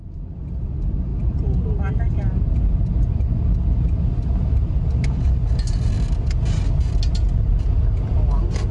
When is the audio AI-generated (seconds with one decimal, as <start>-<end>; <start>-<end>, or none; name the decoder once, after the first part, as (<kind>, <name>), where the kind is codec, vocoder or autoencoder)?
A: none